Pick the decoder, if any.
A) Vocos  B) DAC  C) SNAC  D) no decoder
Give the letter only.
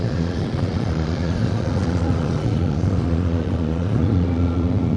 A